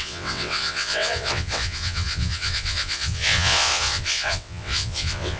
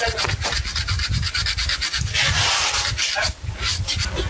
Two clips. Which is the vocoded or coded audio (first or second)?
first